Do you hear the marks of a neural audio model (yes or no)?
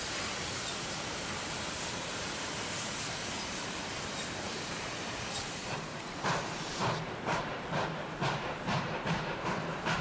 yes